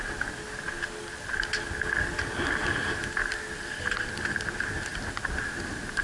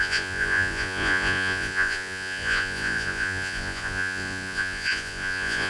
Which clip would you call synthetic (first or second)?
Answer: second